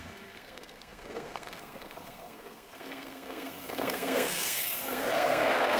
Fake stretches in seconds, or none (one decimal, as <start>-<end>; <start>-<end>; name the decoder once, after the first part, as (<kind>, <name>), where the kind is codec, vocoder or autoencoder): 0.0-5.8 (codec, SNAC)